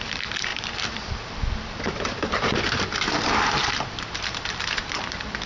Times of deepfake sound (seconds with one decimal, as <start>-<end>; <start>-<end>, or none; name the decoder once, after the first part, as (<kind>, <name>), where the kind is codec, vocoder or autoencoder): 0.0-5.5 (vocoder, BigVGAN v2)